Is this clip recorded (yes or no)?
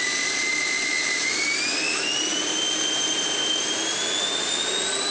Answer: yes